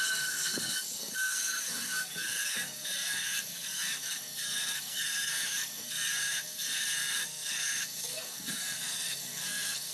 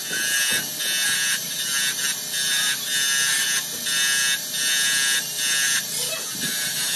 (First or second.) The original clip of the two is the second